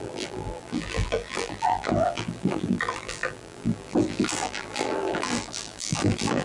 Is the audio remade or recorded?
remade